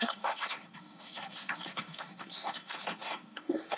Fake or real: fake